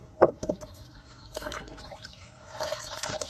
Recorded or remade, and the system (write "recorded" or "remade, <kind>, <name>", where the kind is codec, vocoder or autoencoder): remade, codec, SNAC